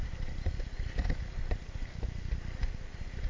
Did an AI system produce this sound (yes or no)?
no